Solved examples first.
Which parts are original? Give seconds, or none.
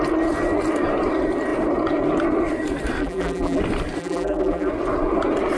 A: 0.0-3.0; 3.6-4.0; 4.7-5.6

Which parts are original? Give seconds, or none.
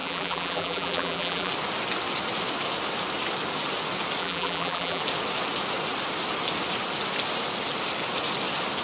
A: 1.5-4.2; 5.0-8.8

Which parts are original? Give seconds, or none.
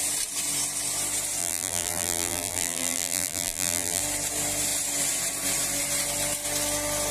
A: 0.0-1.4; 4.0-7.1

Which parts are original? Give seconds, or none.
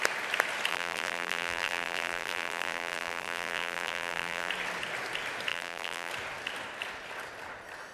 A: 0.0-0.7; 4.5-5.5; 6.1-7.9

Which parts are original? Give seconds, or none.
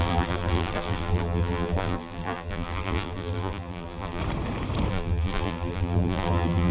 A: 4.2-4.9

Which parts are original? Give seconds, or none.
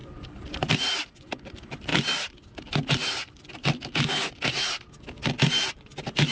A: 1.9-5.7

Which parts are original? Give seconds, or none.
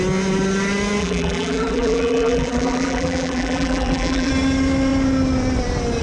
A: 0.0-1.0; 4.3-6.0